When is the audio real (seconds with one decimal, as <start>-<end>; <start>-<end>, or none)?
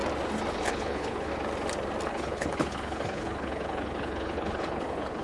0.0-0.6; 1.3-2.1